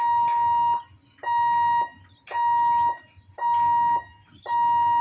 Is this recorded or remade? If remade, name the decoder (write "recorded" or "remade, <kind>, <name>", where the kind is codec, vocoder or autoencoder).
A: recorded